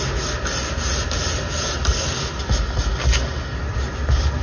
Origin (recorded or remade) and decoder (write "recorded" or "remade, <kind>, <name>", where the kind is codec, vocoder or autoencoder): recorded